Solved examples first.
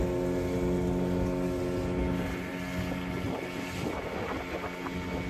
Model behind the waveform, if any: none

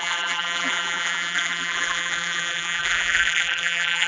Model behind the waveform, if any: vocoder, BigVGAN v2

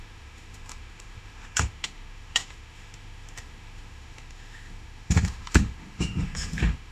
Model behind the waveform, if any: autoencoder, DAC-VAE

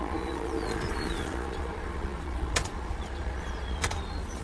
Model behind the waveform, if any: vocoder, Vocos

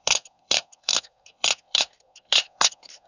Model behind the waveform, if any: codec, SNAC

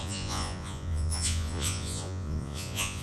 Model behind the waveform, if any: vocoder, Vocos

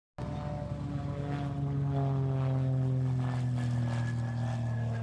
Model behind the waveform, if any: none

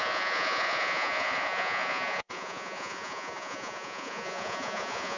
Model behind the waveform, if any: vocoder, Vocos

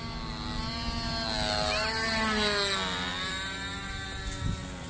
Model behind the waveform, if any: none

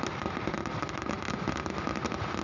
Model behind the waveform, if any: none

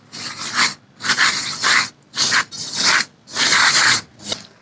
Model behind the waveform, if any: none